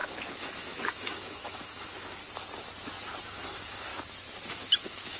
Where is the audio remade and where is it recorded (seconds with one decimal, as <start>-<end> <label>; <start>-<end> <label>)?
0.0-2.2 remade; 2.2-3.2 recorded; 3.2-3.9 remade; 3.9-4.7 recorded; 4.7-5.2 remade

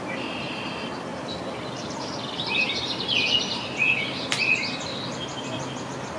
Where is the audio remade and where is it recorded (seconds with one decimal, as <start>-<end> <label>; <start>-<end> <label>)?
0.0-6.2 recorded

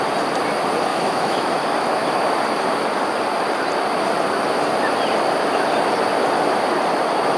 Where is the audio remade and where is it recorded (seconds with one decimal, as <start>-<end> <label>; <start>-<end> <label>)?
0.0-0.9 recorded; 0.9-1.5 remade; 1.5-7.4 recorded

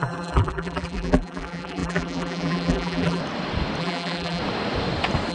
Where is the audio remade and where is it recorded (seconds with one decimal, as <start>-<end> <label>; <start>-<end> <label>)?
0.0-3.2 remade; 3.2-3.8 recorded; 3.8-4.4 remade; 4.4-5.3 recorded

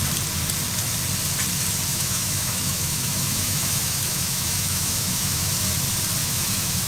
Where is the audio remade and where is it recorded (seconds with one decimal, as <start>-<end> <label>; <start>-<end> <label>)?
0.0-1.9 recorded; 1.9-5.5 remade; 5.5-6.2 recorded; 6.2-6.9 remade

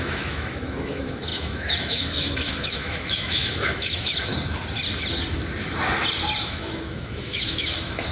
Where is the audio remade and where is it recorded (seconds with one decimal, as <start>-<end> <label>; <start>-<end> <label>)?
0.0-4.3 remade; 4.3-6.4 recorded; 6.4-8.1 remade

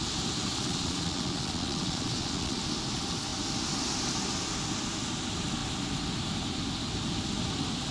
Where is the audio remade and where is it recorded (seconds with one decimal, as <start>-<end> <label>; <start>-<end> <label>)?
0.0-0.5 recorded; 0.5-2.6 remade; 2.6-7.9 recorded